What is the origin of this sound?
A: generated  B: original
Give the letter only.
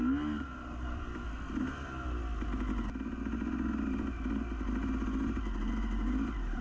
B